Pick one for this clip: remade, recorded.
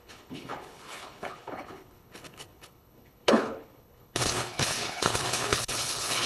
remade